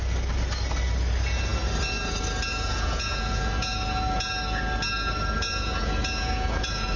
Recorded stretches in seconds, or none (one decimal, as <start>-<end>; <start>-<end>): 0.0-2.5; 4.3-5.4